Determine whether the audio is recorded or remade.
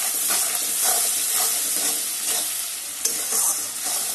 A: recorded